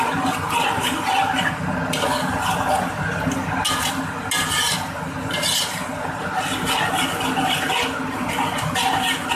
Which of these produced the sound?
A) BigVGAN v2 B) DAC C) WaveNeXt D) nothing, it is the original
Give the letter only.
D